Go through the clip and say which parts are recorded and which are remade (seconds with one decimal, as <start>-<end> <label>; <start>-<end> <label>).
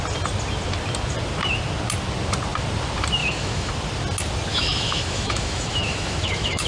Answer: 0.0-3.2 recorded; 3.2-3.7 remade; 3.7-4.5 recorded; 4.5-6.7 remade